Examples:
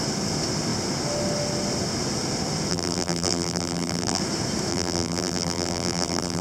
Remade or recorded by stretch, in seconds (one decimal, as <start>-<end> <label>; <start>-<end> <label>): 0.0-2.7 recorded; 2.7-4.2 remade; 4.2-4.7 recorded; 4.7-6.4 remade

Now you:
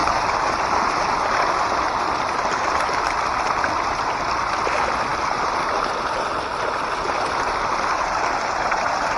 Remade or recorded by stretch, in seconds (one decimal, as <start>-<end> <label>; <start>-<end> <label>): 0.0-3.0 remade; 3.0-5.1 recorded; 5.1-8.2 remade; 8.2-9.2 recorded

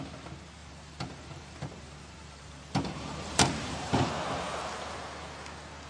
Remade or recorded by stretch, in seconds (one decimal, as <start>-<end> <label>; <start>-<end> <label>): 0.0-0.6 recorded; 0.6-4.1 remade; 4.1-5.9 recorded

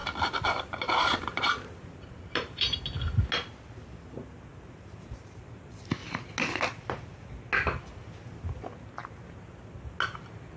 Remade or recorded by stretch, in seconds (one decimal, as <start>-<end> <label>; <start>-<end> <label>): 0.0-2.8 remade; 2.8-4.5 recorded; 4.5-5.7 remade; 5.7-10.6 recorded